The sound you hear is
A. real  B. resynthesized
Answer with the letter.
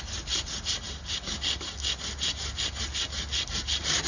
A